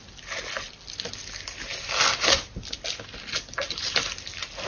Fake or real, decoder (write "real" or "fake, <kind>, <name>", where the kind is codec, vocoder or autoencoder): real